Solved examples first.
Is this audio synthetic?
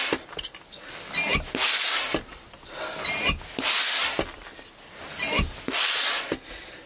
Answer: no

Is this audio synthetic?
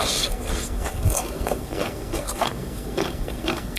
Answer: yes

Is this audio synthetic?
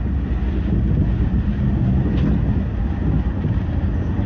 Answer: no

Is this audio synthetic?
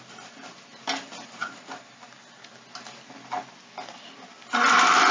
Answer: no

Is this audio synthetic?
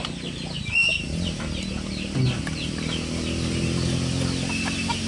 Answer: no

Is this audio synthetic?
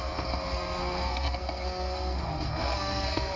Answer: yes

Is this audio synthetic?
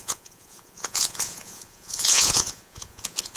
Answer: yes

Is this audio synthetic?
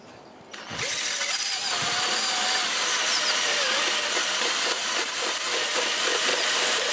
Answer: no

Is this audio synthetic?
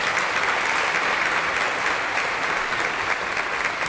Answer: no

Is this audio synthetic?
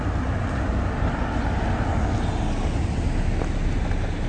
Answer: no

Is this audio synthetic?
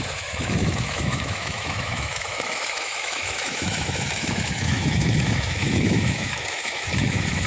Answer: yes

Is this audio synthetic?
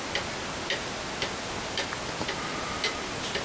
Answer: no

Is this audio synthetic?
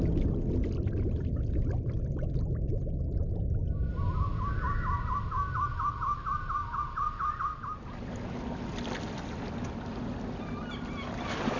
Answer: no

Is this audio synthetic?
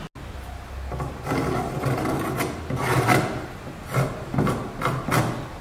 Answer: no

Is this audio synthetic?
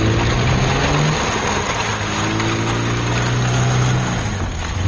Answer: no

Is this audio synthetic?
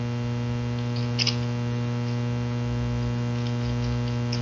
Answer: no